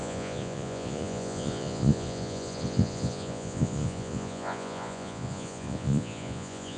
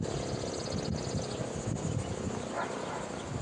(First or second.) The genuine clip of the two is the second